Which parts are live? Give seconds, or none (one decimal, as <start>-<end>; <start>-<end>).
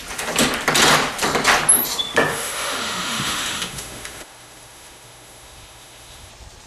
0.0-2.3; 6.3-6.7